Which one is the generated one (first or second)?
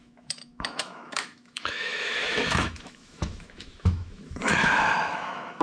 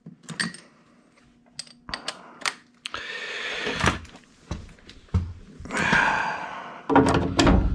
first